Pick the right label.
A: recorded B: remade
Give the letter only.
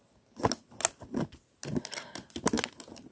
A